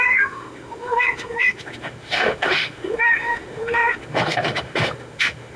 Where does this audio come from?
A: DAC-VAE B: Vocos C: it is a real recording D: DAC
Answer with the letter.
A